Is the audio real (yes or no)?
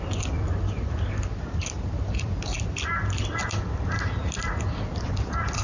yes